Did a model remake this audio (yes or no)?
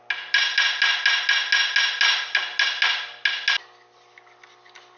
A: no